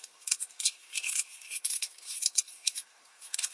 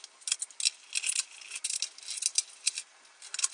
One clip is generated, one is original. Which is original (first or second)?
second